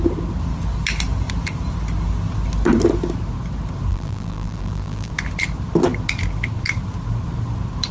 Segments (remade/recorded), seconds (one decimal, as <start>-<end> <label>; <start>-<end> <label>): 0.0-3.9 recorded; 3.9-5.1 remade; 5.1-7.9 recorded